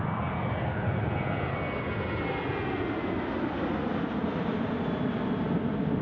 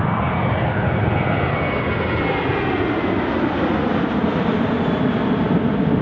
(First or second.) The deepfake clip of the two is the second